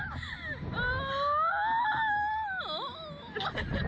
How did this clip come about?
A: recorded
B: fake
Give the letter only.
A